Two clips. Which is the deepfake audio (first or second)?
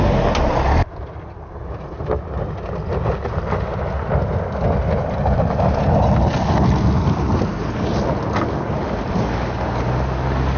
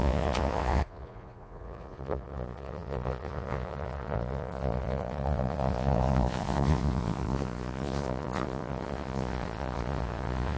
second